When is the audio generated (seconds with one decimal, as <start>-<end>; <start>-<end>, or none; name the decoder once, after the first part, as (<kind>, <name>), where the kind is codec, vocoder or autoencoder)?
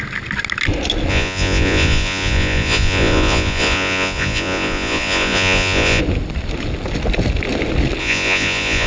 1.1-6.0 (vocoder, Vocos); 8.0-8.9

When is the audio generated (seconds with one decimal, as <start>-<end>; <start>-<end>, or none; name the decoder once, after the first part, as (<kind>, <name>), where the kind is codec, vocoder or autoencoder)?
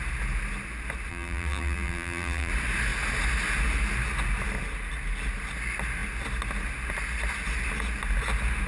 1.1-2.5 (vocoder, BigVGAN v2)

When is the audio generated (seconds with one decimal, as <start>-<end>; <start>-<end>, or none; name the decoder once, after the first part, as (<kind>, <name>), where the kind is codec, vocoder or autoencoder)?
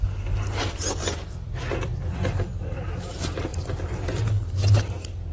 1.0-3.0 (vocoder, BigVGAN v2); 3.5-4.2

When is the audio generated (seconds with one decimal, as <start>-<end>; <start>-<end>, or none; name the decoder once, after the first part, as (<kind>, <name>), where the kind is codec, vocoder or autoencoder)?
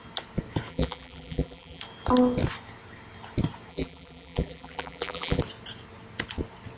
0.7-1.8 (vocoder, BigVGAN v2); 3.7-5.4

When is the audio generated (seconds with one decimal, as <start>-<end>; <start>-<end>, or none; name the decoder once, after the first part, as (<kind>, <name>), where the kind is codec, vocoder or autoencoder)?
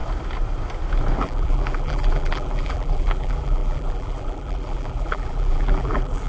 1.2-6.3 (vocoder, BigVGAN v2)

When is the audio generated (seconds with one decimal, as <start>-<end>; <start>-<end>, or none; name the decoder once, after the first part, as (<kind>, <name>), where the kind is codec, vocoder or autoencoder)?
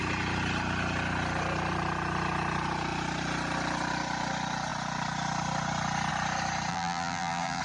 6.7-7.6 (vocoder, BigVGAN v2)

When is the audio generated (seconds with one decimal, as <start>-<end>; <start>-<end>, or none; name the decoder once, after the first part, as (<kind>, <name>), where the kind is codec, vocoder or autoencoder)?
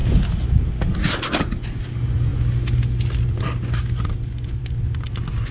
none